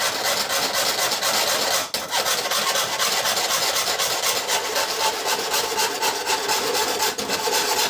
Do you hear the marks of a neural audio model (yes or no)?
no